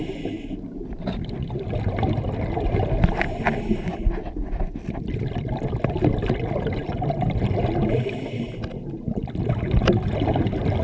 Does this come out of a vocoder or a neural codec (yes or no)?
no